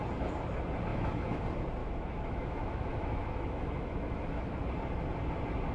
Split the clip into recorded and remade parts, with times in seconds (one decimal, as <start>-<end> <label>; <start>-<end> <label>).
0.0-0.9 recorded; 0.9-1.4 remade; 1.4-1.8 recorded; 1.8-4.7 remade; 4.7-5.7 recorded